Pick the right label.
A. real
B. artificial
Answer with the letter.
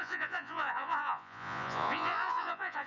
B